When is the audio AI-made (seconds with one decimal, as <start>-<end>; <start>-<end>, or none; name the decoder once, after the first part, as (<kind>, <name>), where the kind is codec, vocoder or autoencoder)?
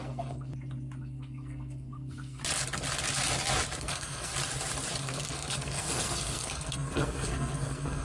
0.0-0.5 (codec, SNAC); 1.0-2.4; 3.8-4.3; 5.0-8.0